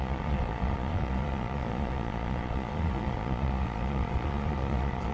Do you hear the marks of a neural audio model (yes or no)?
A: yes